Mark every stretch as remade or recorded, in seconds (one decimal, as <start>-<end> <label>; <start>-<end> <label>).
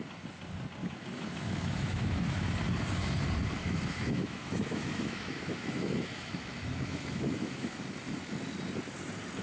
0.0-0.8 recorded; 0.8-2.5 remade; 2.5-3.6 recorded; 3.6-7.8 remade; 7.8-9.4 recorded